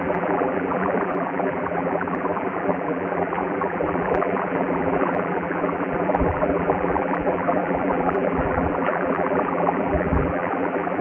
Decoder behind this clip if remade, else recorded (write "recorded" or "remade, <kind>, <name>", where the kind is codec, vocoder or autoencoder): remade, vocoder, BigVGAN v2